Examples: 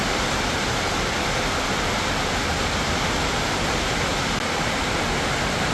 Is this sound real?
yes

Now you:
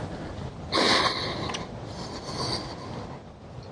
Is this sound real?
yes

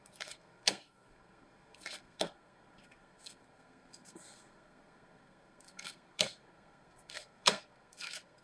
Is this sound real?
no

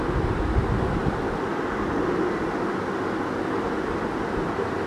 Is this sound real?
yes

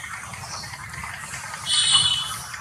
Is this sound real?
yes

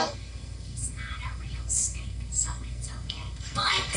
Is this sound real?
no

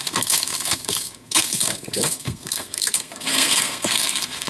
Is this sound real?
no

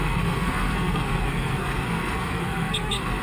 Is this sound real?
no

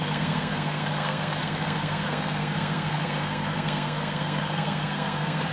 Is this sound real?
no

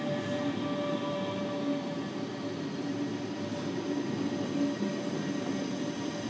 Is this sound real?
yes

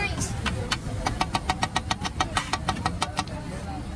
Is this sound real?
yes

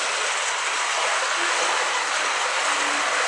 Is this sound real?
yes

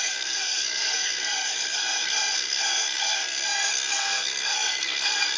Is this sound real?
no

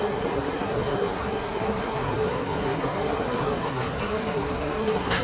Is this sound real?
no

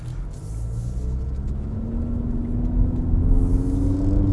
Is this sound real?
yes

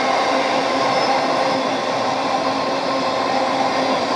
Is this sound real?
yes